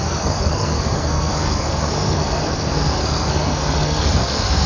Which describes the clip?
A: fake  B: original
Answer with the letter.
A